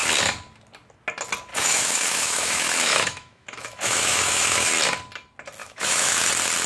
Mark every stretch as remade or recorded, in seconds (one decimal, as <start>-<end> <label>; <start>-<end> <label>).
0.0-1.5 recorded; 1.5-4.7 remade; 4.7-5.6 recorded; 5.6-6.3 remade; 6.3-6.7 recorded